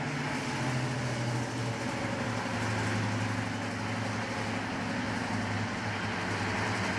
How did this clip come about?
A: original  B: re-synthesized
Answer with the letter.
A